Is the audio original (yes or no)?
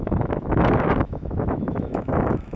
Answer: no